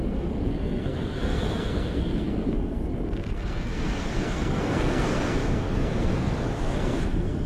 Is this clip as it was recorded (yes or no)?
no